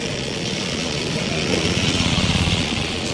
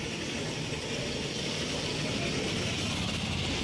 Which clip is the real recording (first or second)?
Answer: second